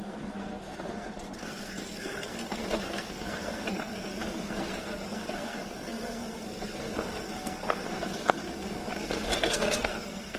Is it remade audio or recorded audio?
remade